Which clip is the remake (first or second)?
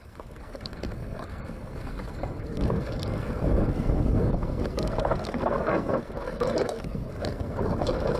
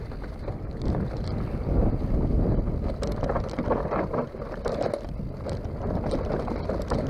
first